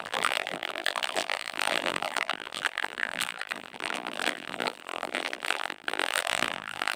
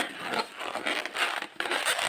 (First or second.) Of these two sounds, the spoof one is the first